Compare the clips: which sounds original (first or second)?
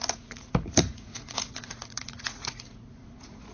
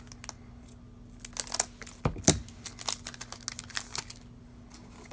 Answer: second